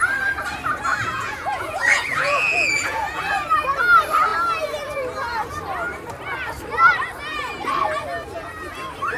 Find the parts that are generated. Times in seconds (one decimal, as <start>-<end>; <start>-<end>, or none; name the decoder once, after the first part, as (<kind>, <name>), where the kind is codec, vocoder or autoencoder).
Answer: 0.9-3.2 (vocoder, Vocos)